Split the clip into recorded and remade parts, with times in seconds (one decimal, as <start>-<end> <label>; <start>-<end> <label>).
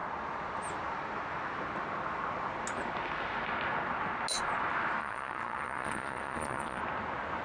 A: 0.0-5.0 recorded; 5.0-6.8 remade; 6.8-7.4 recorded